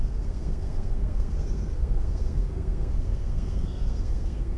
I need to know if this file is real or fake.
fake